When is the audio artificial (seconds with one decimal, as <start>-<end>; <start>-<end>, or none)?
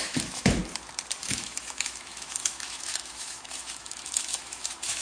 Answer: 0.0-0.6; 1.2-5.0